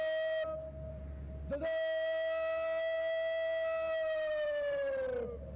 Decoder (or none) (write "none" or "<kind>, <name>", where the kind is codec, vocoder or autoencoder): none